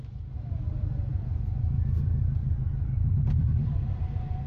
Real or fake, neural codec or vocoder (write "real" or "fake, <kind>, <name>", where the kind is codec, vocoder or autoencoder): fake, vocoder, BigVGAN v2